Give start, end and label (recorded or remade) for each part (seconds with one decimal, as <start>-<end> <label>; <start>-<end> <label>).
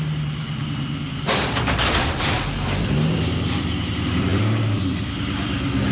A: 0.0-5.9 remade